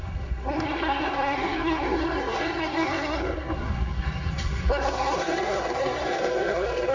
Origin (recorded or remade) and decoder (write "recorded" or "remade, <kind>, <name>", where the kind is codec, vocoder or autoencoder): remade, codec, SNAC